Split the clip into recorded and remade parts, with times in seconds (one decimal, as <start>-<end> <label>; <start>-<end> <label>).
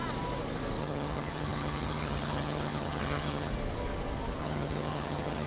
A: 0.0-0.8 recorded; 0.8-3.5 remade; 3.5-4.4 recorded; 4.4-5.5 remade